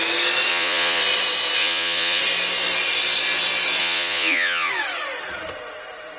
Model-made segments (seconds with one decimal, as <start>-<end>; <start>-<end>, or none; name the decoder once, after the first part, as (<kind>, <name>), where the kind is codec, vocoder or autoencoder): 0.5-1.0 (vocoder, Vocos); 1.6-2.2; 3.8-4.7